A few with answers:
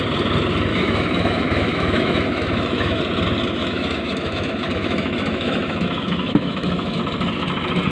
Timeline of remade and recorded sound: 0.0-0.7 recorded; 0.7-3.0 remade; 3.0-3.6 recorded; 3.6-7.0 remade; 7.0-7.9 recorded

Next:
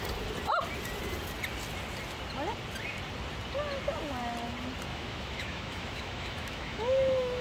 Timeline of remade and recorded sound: 0.0-4.9 recorded; 4.9-7.4 remade

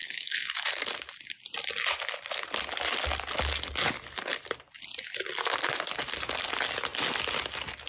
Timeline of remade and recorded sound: 0.0-0.7 remade; 0.7-7.9 recorded

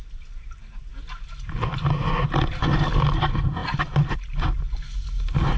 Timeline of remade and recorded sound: 0.0-5.6 recorded